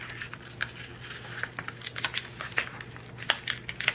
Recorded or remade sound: recorded